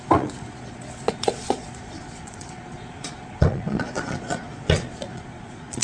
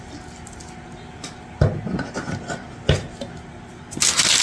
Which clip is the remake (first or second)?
first